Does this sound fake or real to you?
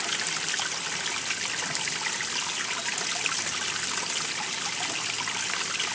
real